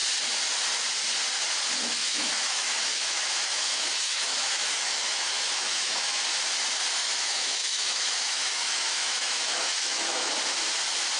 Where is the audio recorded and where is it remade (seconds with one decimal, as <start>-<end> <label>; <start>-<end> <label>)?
0.0-2.0 recorded; 2.0-6.2 remade; 6.2-7.0 recorded; 7.0-10.3 remade; 10.3-11.2 recorded